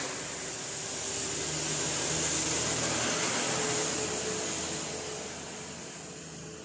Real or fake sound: real